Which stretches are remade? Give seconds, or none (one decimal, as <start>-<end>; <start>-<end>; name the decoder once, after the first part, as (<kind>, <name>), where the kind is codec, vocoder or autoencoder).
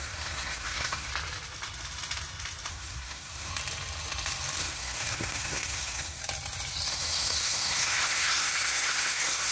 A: 0.0-1.1 (codec, SNAC); 2.7-3.5; 4.6-6.2; 6.9-9.5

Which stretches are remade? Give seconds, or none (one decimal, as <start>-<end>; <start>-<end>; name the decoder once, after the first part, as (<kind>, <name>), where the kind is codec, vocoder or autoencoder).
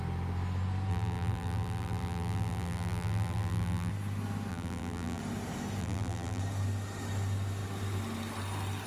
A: 0.9-3.9 (vocoder, BigVGAN v2); 4.5-5.2; 5.8-6.4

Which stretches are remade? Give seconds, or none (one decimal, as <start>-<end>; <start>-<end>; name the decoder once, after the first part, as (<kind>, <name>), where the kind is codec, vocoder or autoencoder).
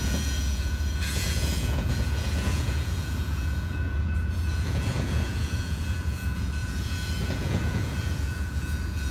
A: 0.0-9.1 (vocoder, Vocos)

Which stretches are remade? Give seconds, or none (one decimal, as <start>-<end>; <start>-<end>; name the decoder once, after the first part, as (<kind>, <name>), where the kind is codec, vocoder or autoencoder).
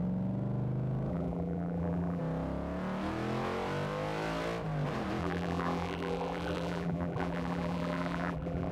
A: 1.1-2.2 (vocoder, BigVGAN v2); 5.2-8.7